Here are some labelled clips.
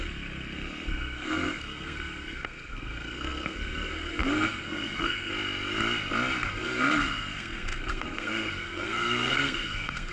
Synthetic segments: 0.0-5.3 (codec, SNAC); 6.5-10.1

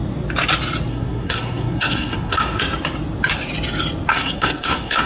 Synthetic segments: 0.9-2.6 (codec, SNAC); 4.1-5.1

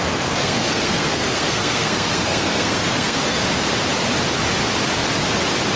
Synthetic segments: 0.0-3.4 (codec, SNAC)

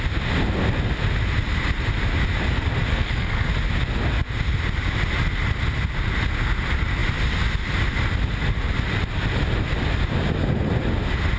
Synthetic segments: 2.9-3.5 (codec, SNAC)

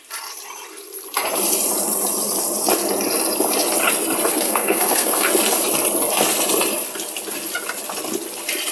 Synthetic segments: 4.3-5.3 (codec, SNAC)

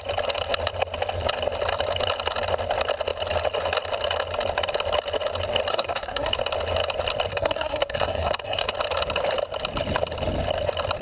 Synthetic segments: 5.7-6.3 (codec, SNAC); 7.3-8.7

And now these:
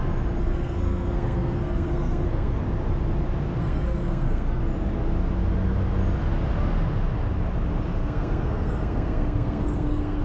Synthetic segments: 0.4-2.6 (codec, SNAC); 3.6-4.6; 8.0-10.2